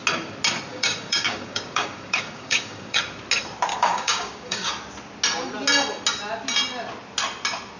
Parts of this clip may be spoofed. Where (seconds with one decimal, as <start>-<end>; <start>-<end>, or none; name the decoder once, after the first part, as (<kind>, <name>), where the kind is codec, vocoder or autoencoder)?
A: 0.7-3.0 (codec, DAC); 3.7-4.7